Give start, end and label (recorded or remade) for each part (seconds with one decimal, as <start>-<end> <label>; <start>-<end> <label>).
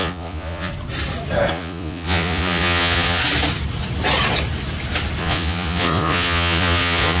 0.0-0.7 remade; 0.7-1.5 recorded; 1.5-3.2 remade; 3.2-5.2 recorded; 5.2-7.2 remade